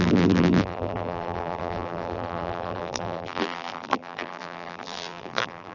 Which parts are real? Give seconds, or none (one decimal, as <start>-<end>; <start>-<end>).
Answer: none